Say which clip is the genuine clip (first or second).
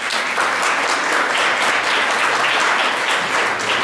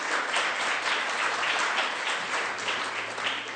first